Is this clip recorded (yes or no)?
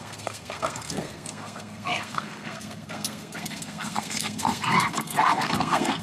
no